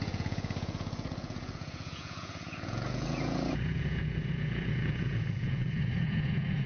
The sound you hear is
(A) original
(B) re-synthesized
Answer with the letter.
B